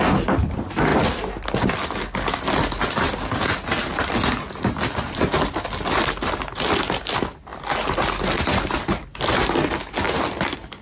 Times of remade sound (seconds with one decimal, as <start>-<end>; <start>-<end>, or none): none